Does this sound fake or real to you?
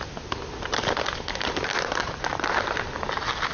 real